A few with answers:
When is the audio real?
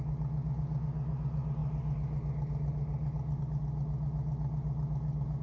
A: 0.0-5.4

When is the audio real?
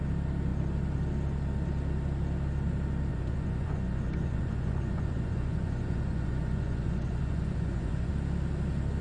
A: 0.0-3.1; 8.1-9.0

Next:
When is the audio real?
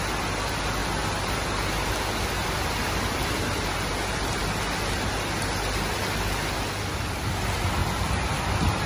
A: 0.0-2.4; 3.3-7.8; 8.3-8.9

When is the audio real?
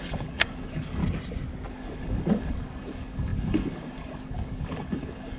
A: 1.0-1.7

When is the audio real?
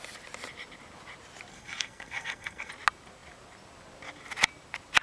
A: 0.0-1.5; 2.7-5.0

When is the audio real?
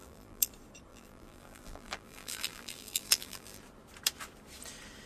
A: 0.5-0.9; 3.6-5.1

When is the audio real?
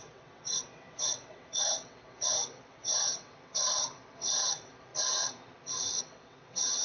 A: 4.9-6.0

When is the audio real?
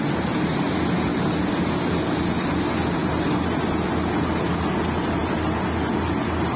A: 0.0-6.6